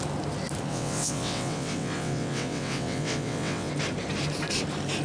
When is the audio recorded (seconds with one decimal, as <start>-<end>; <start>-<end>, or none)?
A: 0.0-0.7; 3.7-5.0